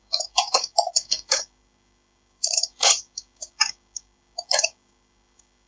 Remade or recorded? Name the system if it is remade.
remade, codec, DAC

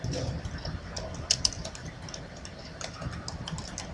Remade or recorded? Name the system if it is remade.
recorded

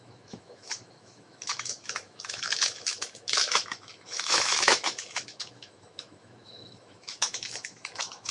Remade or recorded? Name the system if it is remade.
remade, autoencoder, DAC-VAE